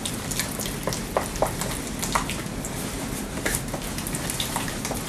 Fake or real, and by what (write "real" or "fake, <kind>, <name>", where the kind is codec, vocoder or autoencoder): real